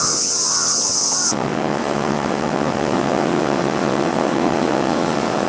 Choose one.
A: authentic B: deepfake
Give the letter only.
B